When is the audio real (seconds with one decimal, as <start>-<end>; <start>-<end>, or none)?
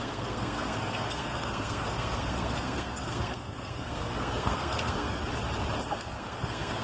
5.2-5.9